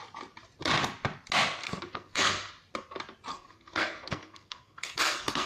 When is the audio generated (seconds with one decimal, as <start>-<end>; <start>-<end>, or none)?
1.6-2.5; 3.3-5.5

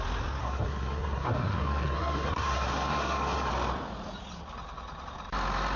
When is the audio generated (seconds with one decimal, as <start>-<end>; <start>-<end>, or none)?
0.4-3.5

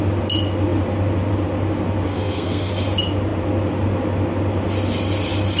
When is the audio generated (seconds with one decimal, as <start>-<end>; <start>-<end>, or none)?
2.1-2.7

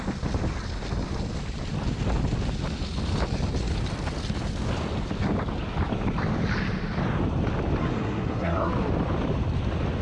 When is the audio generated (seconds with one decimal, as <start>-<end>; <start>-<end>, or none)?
7.8-8.7

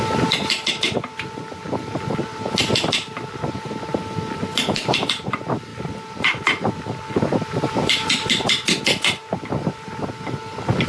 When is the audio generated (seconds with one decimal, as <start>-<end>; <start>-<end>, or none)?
none

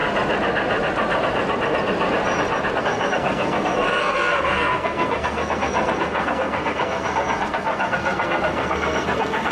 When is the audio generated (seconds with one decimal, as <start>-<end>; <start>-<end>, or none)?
2.8-9.5